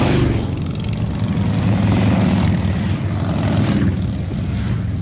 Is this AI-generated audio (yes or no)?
no